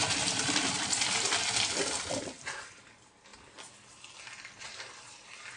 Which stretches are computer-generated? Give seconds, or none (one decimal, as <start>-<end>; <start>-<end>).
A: 0.0-1.4; 2.2-3.3; 4.6-5.6